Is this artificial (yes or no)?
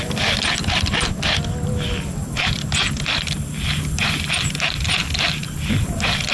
no